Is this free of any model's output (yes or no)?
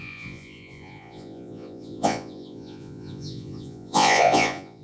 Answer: no